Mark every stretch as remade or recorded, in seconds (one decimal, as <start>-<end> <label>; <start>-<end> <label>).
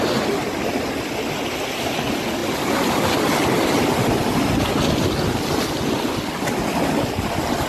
0.0-7.7 recorded